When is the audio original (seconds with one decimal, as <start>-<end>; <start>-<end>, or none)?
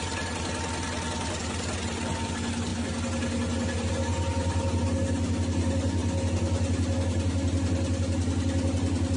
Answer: 0.0-9.2